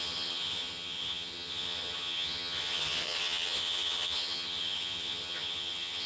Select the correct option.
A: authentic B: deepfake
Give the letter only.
B